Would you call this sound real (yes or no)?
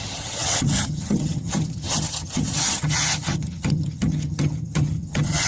no